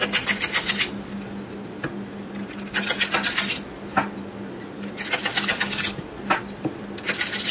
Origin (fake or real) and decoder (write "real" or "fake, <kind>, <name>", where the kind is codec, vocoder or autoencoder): real